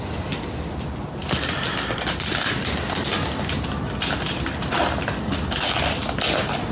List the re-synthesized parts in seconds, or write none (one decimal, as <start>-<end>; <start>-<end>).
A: none